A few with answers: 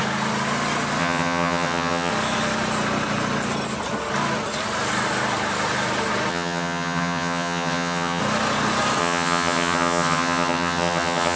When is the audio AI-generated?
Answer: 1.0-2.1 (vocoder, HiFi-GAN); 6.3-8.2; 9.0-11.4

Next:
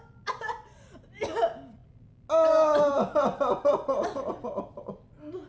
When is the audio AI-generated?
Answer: none

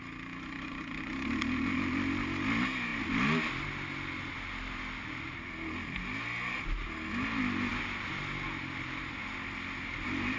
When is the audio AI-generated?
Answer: none

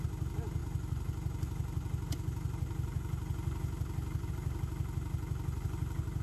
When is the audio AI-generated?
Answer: none

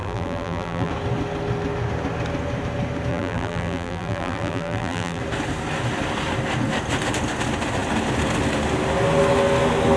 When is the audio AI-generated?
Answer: 0.0-0.9 (vocoder, BigVGAN v2); 3.1-5.2

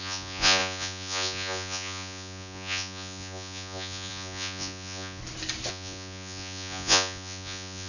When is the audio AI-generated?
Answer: 0.0-5.2 (vocoder, Vocos); 5.7-7.9